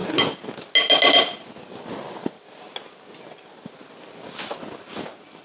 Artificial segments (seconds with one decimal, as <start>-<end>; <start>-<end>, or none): none